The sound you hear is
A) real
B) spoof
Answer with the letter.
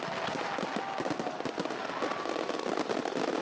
A